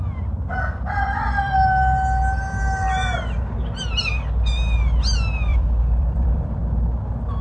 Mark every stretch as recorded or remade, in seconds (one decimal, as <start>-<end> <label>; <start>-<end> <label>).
0.0-5.5 recorded; 5.5-7.4 remade